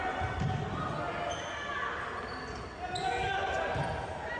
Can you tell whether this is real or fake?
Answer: real